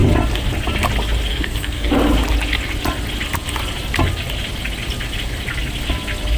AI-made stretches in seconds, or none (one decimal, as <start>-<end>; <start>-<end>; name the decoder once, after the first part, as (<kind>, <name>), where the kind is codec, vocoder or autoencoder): 1.3-1.9 (codec, SNAC)